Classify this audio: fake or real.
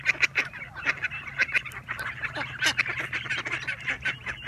real